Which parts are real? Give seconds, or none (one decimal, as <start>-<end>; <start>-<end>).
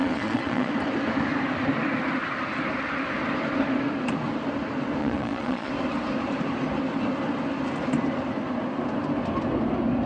0.7-5.0; 5.7-10.1